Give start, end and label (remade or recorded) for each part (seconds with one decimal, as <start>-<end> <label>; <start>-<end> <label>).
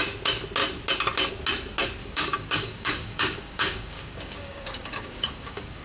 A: 0.0-2.0 recorded; 2.0-5.8 remade